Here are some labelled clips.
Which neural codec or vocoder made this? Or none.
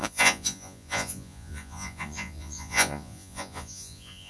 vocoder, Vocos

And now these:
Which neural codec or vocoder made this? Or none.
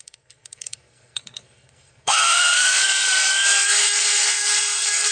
codec, SNAC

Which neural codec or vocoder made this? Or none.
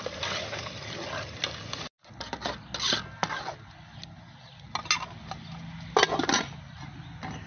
none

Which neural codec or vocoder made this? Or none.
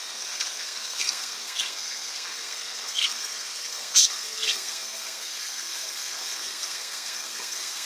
codec, SNAC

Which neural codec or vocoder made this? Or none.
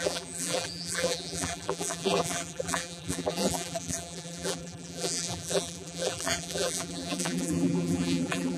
vocoder, BigVGAN v2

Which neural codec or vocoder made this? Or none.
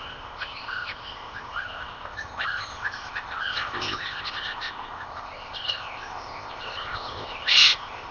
codec, ZipCodec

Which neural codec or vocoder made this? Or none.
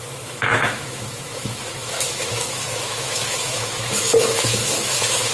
autoencoder, DAC-VAE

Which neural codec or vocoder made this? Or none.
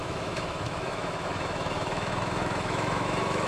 autoencoder, DAC-VAE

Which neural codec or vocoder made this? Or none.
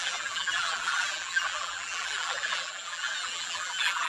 vocoder, BigVGAN v2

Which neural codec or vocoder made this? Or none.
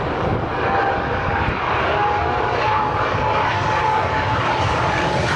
codec, DAC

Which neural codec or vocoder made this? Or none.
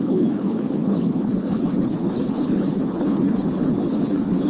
codec, HILCodec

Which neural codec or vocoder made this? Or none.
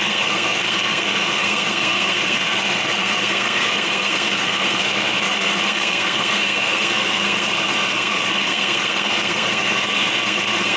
codec, SNAC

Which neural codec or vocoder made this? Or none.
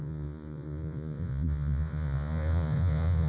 vocoder, Vocos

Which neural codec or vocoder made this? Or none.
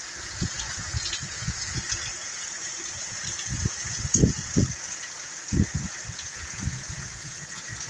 vocoder, Vocos